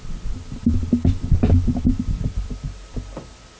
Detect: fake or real real